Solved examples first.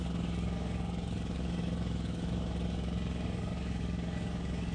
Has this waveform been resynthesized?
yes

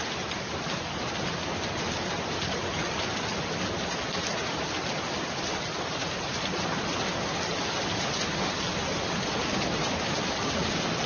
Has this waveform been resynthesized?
no